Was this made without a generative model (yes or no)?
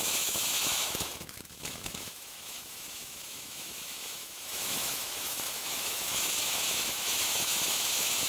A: no